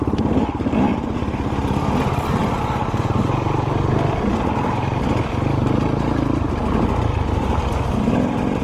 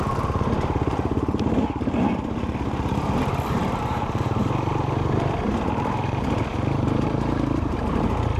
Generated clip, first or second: second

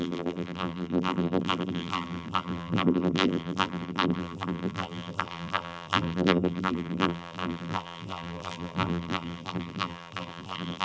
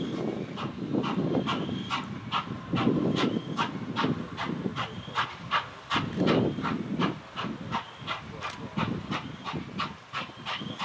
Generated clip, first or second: first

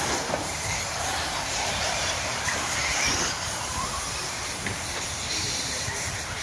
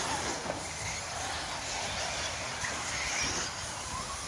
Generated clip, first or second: first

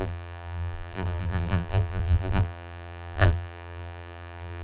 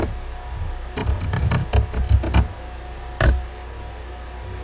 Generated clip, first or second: first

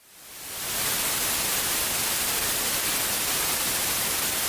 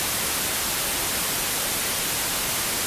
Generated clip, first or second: first